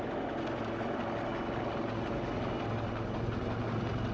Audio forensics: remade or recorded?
recorded